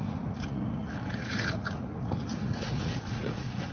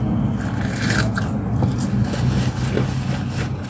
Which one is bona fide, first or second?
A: second